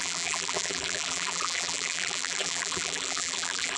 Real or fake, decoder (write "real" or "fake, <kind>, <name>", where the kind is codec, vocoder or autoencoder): fake, vocoder, BigVGAN v2